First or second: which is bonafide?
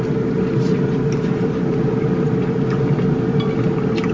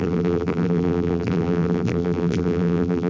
first